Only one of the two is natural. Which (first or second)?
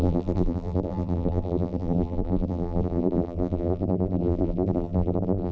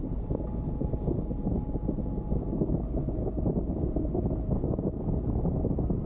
second